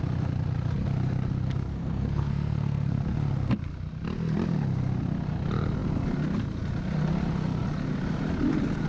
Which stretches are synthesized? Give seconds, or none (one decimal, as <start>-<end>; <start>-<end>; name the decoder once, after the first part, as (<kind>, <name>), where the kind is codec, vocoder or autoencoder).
1.7-3.0 (codec, SNAC)